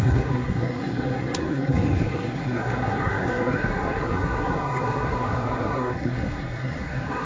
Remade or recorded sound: remade